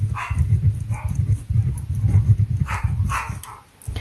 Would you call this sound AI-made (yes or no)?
no